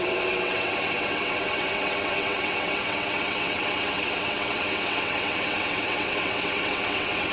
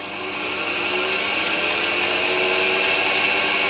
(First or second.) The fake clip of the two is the first